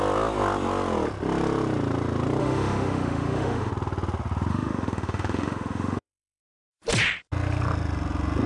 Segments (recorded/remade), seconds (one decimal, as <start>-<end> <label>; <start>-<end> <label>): 0.0-2.4 recorded; 2.4-3.7 remade; 3.7-4.5 recorded; 4.5-6.4 remade; 6.4-8.5 recorded